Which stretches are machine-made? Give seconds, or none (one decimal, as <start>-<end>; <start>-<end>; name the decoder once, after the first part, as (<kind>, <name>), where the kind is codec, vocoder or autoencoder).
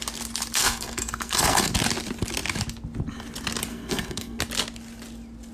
0.6-1.7 (codec, SNAC); 3.7-4.4